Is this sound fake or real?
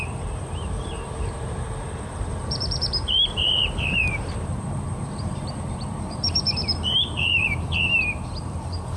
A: fake